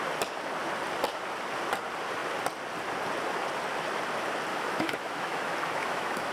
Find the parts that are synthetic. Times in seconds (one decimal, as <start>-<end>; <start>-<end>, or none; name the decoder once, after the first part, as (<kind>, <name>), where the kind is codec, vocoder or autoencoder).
4.5-6.3 (autoencoder, DAC-VAE)